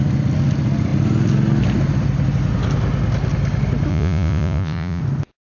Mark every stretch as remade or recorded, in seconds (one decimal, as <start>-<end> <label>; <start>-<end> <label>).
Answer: 0.0-3.9 recorded; 3.9-5.0 remade; 5.0-5.5 recorded